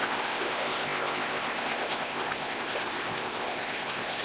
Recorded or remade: remade